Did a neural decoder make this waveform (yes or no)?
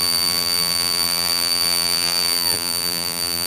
yes